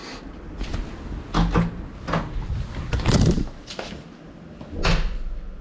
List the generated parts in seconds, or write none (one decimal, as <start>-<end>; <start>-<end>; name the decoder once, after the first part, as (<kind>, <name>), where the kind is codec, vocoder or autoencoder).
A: 0.0-0.8 (vocoder, BigVGAN v2)